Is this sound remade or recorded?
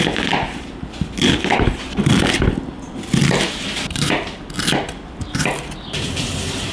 remade